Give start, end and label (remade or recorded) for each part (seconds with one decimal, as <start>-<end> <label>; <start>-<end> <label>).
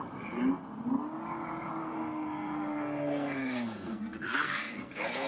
0.0-1.8 recorded; 1.8-5.3 remade